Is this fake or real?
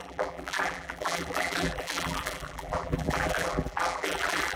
fake